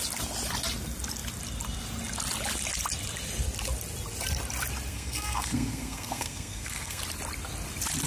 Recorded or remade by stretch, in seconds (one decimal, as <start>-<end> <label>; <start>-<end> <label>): 0.0-4.9 recorded; 4.9-7.0 remade; 7.0-8.1 recorded